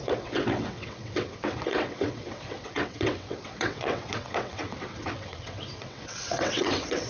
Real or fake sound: fake